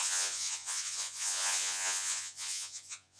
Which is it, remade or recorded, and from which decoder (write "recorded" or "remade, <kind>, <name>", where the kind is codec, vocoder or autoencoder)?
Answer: remade, vocoder, Vocos